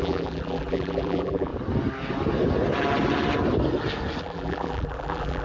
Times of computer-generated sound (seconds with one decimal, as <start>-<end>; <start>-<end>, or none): 0.0-1.5; 4.2-5.4

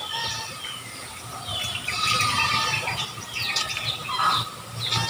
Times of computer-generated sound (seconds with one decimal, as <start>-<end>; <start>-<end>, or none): 1.5-4.6

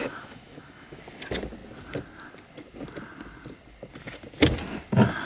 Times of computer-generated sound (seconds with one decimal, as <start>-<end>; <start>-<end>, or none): 0.0-1.0

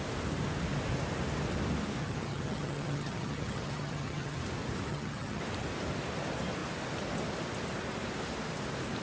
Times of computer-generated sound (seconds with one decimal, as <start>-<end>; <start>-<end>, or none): 2.0-4.4; 4.9-5.4